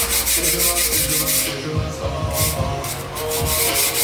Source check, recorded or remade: recorded